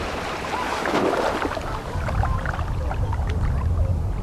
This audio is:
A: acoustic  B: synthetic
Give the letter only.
A